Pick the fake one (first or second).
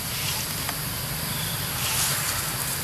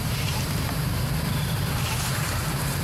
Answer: second